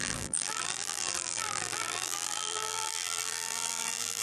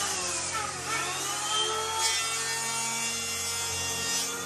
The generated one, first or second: first